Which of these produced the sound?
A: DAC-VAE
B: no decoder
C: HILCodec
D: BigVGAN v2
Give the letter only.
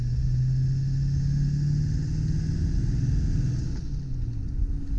B